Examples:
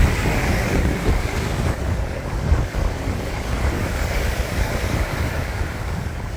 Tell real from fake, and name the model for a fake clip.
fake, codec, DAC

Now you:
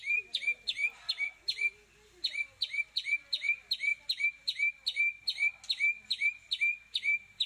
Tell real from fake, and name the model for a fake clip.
real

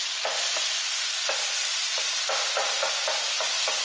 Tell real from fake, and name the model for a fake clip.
real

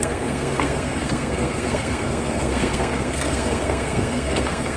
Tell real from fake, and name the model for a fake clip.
fake, codec, SNAC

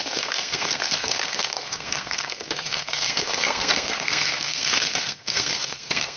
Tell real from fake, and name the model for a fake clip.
fake, codec, SNAC